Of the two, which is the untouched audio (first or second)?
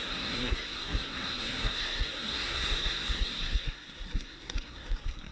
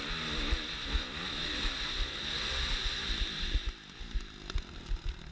second